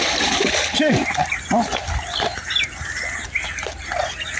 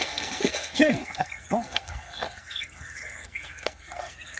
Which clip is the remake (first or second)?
second